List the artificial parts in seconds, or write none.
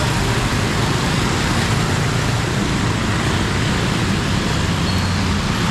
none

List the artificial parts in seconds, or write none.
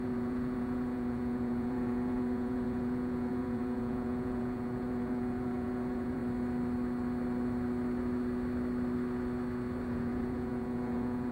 0.0-6.2 (vocoder, Vocos); 9.9-11.3